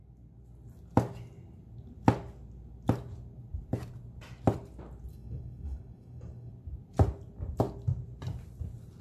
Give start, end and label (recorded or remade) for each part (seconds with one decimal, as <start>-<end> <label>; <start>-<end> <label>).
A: 0.0-5.1 recorded; 5.1-6.5 remade; 6.5-9.0 recorded